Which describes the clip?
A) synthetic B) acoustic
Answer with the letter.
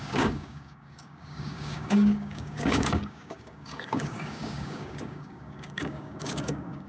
A